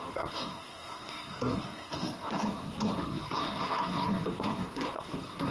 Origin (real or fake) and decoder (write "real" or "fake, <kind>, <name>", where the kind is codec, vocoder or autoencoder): fake, codec, SNAC